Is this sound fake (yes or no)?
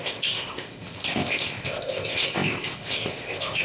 yes